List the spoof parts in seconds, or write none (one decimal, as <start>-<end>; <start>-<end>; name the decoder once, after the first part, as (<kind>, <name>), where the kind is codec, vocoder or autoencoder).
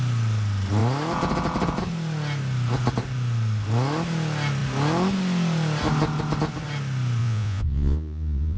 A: 7.2-8.6 (vocoder, Vocos)